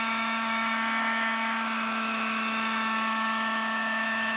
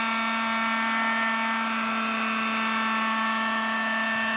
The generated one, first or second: first